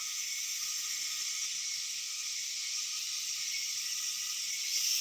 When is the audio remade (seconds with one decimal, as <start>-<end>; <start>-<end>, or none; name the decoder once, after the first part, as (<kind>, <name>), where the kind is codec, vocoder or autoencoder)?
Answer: 0.0-3.0 (autoencoder, DAC-VAE)